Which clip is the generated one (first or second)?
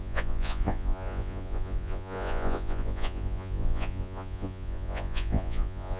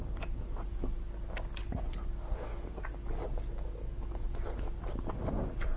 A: first